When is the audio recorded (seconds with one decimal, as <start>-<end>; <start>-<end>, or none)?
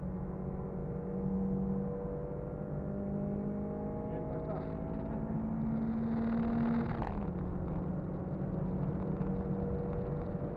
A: 0.0-10.6